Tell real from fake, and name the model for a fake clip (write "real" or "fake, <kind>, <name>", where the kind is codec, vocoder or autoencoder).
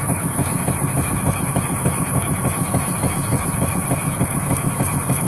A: fake, autoencoder, DAC-VAE